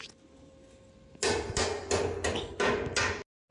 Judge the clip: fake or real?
real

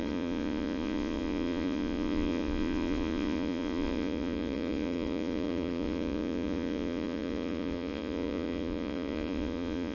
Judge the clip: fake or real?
fake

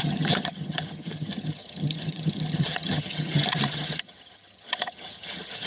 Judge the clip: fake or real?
fake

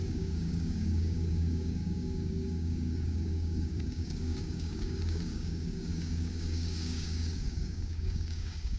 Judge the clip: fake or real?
fake